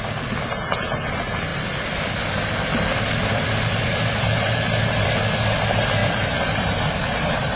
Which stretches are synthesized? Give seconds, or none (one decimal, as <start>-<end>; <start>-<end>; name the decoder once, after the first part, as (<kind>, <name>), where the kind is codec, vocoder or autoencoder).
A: 1.5-5.2 (vocoder, BigVGAN v2); 6.0-7.6